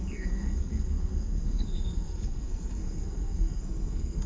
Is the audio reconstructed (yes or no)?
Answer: yes